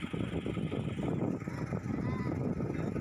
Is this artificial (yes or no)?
no